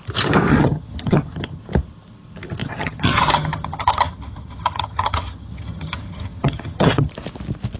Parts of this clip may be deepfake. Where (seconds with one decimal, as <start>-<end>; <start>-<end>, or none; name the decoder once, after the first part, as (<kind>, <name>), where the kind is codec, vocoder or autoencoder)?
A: 0.5-1.6 (vocoder, HiFi-GAN); 2.6-7.1